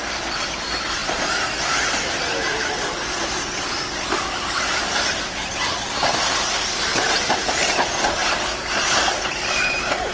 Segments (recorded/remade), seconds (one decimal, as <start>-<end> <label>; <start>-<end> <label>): 0.0-6.9 recorded; 6.9-7.5 remade; 7.5-10.1 recorded